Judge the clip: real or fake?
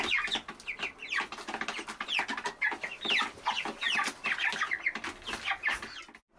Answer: real